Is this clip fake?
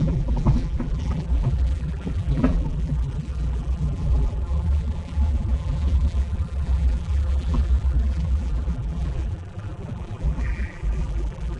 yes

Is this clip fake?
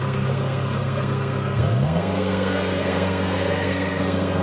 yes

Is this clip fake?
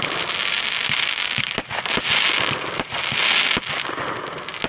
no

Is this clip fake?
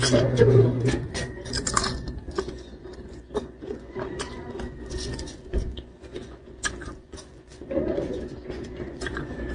yes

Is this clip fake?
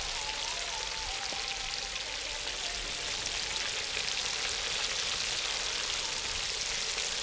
no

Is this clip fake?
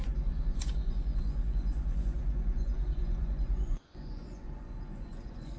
yes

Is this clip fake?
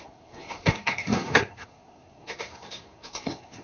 yes